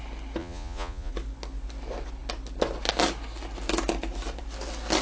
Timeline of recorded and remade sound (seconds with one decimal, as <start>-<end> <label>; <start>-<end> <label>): 0.0-0.4 recorded; 0.4-1.1 remade; 1.1-5.0 recorded